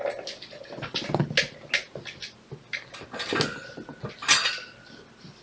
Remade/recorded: recorded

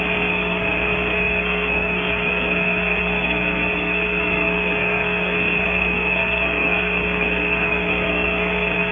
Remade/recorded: remade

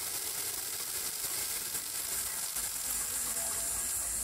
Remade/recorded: recorded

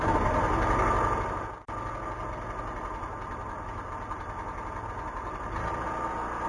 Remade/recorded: recorded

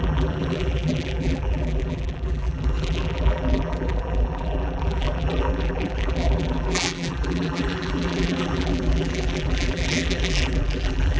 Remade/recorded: remade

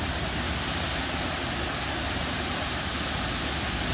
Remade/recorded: recorded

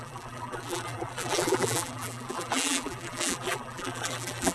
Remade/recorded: remade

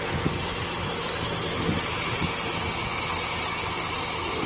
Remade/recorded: recorded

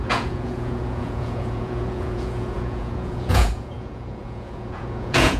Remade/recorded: remade